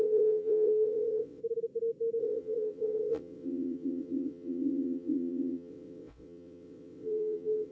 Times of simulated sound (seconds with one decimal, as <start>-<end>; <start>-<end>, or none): 0.0-1.4; 2.2-7.7